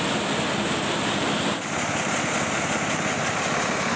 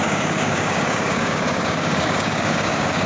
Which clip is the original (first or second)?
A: first